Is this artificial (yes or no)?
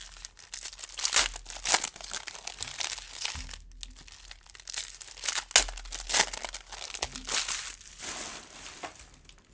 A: no